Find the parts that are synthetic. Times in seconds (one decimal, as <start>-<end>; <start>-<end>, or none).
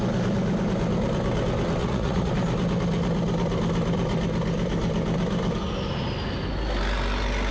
1.8-2.3